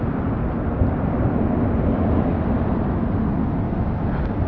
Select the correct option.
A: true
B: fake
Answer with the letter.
A